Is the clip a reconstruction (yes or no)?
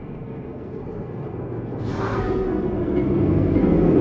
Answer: yes